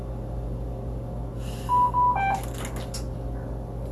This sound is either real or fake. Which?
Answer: real